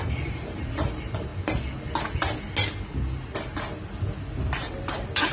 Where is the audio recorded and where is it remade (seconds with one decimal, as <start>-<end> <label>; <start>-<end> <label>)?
0.0-1.3 remade; 1.3-4.5 recorded; 4.5-5.3 remade